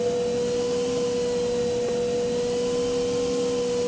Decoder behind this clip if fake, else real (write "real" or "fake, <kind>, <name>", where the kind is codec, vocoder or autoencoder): real